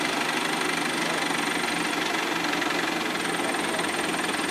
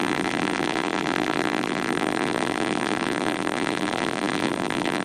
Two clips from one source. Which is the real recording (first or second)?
first